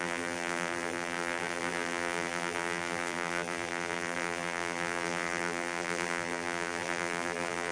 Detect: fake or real fake